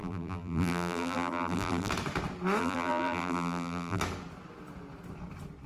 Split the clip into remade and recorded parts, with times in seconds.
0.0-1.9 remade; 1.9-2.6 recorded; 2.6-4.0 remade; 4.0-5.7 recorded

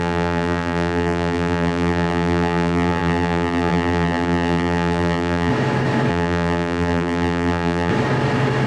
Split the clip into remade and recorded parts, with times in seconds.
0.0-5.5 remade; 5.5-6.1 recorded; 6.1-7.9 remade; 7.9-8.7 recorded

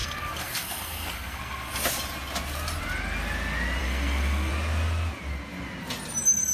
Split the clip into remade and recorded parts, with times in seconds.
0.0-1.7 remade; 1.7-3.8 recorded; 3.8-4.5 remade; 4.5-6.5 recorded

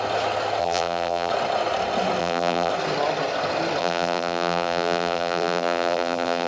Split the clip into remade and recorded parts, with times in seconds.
0.0-0.6 recorded; 0.6-1.3 remade; 1.3-2.2 recorded; 2.2-2.7 remade; 2.7-3.8 recorded; 3.8-6.5 remade

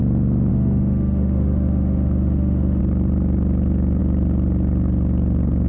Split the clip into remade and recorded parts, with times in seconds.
0.0-0.5 recorded; 0.5-2.8 remade; 2.8-5.7 recorded